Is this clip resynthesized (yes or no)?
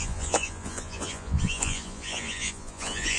yes